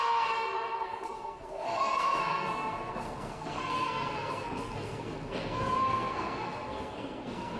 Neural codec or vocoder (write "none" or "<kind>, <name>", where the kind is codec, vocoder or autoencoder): codec, SNAC